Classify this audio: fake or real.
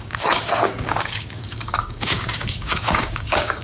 fake